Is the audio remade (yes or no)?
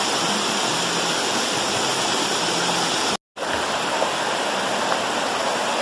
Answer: no